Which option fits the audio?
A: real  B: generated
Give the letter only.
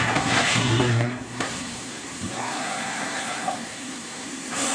B